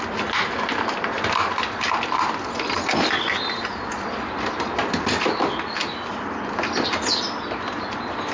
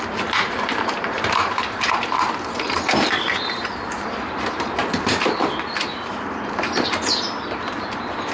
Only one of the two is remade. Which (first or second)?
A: second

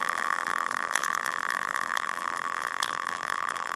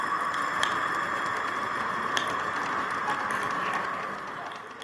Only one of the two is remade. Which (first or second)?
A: first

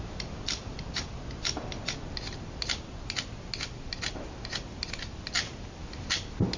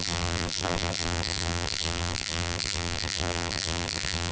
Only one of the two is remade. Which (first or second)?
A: second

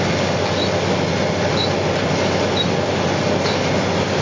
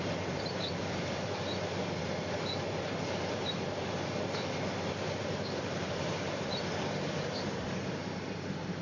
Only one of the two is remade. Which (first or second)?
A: second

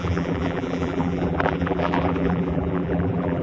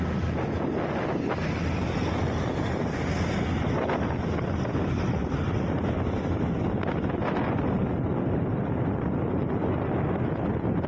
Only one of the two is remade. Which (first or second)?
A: first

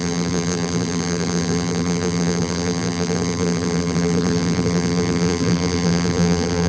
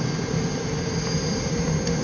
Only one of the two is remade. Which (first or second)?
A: first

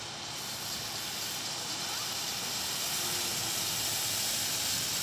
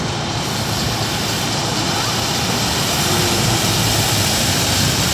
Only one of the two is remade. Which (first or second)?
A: second